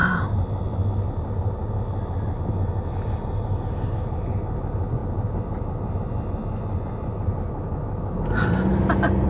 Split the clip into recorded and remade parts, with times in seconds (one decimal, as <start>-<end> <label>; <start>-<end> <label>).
0.0-9.3 recorded